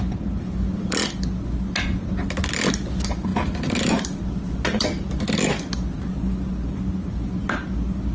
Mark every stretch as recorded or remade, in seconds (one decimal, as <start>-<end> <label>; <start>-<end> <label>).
0.0-8.1 recorded

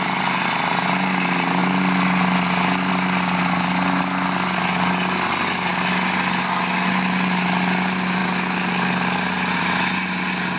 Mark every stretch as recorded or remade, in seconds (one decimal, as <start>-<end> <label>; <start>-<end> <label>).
0.0-10.6 recorded

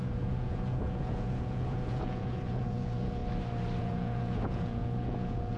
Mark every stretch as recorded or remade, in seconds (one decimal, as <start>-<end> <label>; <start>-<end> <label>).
0.0-3.2 remade; 3.2-3.8 recorded; 3.8-5.6 remade

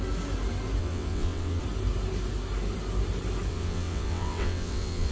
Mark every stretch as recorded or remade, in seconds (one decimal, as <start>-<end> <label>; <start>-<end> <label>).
0.0-0.8 recorded; 0.8-1.6 remade; 1.6-3.5 recorded; 3.5-5.1 remade

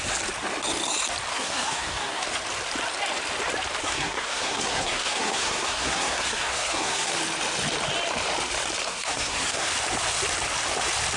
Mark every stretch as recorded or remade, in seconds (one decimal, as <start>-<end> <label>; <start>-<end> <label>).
0.0-1.3 recorded; 1.3-2.2 remade; 2.2-3.8 recorded; 3.8-7.1 remade; 7.1-8.8 recorded; 8.8-9.7 remade; 9.7-11.2 recorded